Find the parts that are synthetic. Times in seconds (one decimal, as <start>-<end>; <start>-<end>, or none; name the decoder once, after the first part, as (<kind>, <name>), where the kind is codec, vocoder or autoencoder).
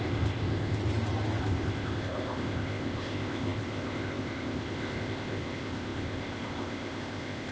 0.0-0.8 (codec, ZipCodec); 1.4-7.5